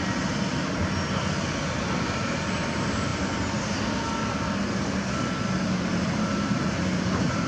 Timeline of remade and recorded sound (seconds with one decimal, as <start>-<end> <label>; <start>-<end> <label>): 0.0-7.5 recorded